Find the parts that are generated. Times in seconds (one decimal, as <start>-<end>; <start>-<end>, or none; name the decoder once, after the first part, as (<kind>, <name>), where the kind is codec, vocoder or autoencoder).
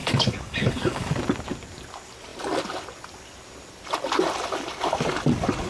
0.0-1.1 (codec, DAC)